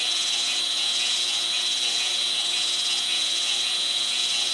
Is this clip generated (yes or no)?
yes